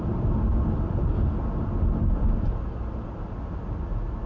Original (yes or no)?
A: yes